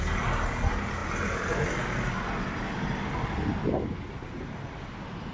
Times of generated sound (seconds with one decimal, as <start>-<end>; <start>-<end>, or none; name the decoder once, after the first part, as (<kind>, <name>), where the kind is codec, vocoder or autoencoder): none